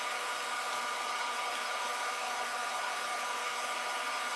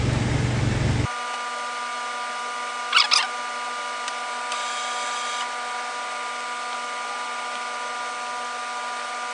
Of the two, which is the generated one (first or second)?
first